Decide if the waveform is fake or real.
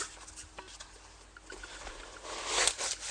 real